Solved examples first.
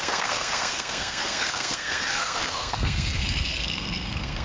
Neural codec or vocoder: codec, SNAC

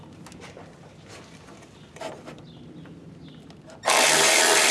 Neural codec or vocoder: none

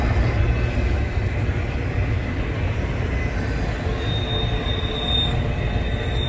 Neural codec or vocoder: none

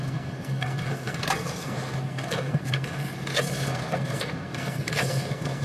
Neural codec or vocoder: codec, SNAC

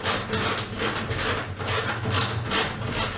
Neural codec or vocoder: none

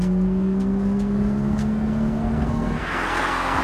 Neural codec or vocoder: codec, SNAC